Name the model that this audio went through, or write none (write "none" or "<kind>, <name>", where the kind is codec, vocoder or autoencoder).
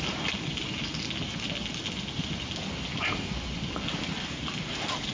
none